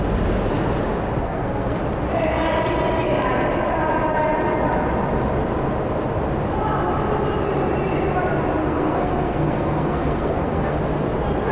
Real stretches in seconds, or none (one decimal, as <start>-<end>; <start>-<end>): 0.0-1.2; 1.8-8.6; 10.8-11.5

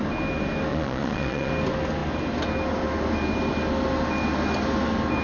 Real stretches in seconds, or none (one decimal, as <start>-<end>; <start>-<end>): 0.0-0.7; 1.5-5.2

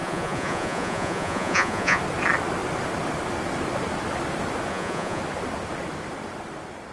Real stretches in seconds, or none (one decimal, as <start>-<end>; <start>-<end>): 2.0-4.7; 5.2-6.9

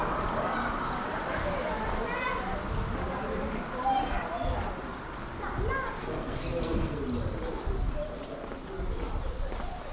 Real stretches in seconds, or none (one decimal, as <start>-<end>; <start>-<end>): 0.0-6.0; 7.0-9.9

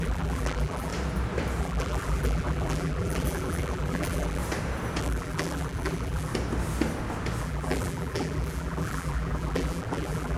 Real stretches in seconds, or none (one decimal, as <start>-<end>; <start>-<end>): 0.9-1.6; 4.4-5.0; 6.3-7.4

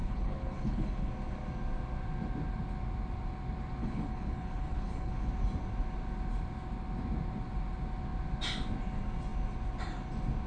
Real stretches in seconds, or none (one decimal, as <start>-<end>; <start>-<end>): 1.1-3.8; 5.3-10.5